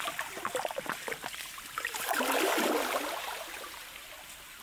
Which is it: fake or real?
real